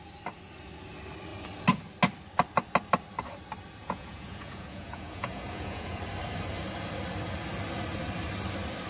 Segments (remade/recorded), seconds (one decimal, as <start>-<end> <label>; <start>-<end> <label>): 0.0-3.8 recorded; 3.8-6.0 remade; 6.0-8.9 recorded